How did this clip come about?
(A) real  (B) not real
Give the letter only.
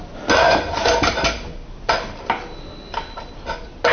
A